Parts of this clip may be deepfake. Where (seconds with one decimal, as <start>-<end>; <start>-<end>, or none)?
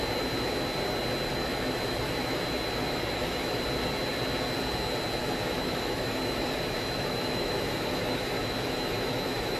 1.3-2.4; 2.8-3.6; 5.2-9.6